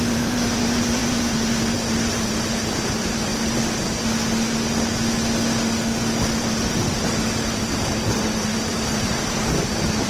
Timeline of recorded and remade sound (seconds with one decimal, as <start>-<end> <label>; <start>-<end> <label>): 0.0-3.3 remade; 3.3-6.4 recorded; 6.4-10.1 remade